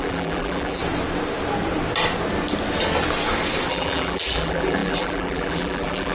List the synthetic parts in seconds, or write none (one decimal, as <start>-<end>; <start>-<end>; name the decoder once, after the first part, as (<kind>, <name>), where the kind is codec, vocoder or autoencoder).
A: 0.0-0.8 (vocoder, BigVGAN v2); 3.7-6.1